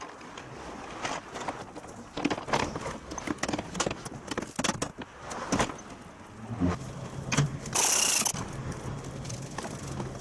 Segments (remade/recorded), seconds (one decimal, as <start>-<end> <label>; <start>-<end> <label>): 0.0-10.2 recorded